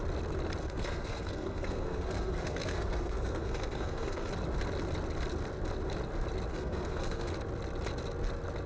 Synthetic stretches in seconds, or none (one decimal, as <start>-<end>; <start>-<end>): 0.6-4.3; 6.5-7.3